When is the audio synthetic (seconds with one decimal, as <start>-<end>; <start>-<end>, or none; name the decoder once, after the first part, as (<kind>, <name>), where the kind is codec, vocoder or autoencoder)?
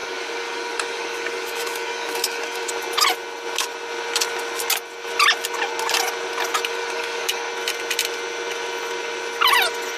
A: 0.0-2.7 (codec, DAC); 6.7-7.5